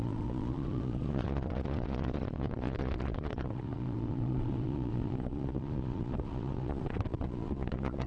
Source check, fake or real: fake